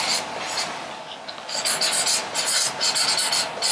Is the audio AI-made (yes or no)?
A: no